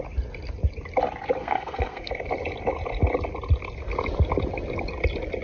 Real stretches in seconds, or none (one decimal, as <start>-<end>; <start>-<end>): 0.0-1.4; 2.1-5.4